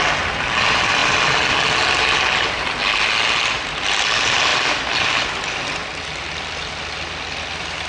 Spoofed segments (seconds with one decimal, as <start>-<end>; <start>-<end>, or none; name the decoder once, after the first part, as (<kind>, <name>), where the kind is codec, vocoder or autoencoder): none